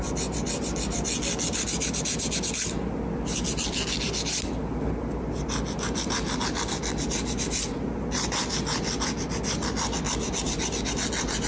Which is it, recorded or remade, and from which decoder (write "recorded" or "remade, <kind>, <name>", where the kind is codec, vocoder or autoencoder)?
recorded